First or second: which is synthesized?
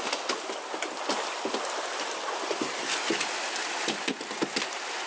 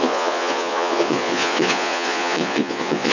second